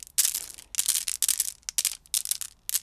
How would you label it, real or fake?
real